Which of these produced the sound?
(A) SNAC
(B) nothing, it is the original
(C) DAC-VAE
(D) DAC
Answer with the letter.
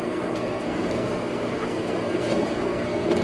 A